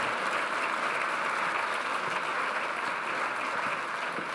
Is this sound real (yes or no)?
yes